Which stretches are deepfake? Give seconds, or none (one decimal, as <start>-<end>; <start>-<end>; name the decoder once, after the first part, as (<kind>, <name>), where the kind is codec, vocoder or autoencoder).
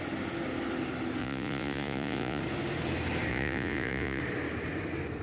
1.2-2.4 (vocoder, Vocos); 3.3-4.2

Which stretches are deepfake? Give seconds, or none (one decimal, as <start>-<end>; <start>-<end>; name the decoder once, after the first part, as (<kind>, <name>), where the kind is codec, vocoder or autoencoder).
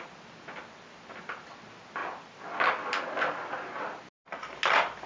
none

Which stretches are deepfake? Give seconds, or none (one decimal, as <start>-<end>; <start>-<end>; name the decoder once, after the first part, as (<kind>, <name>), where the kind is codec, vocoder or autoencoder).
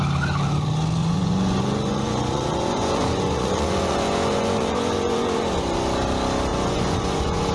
1.0-5.4 (vocoder, Vocos); 6.5-7.5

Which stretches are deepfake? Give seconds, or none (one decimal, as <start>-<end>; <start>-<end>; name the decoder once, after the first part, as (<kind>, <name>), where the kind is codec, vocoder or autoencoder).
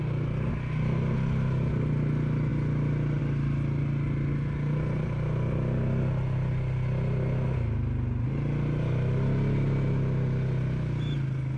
none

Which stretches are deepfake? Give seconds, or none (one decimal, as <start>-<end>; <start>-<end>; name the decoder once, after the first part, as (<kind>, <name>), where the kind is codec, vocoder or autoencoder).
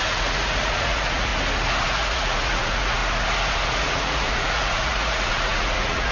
0.0-1.3 (vocoder, Vocos); 1.8-3.0; 3.7-6.1